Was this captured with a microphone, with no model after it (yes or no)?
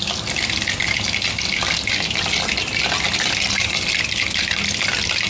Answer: yes